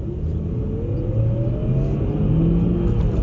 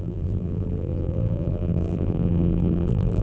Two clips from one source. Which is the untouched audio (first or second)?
first